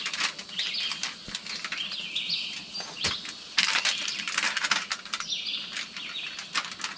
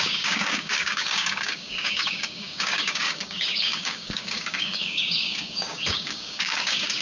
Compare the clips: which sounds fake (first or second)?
second